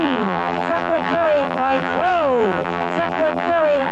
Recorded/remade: remade